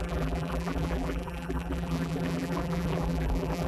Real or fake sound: fake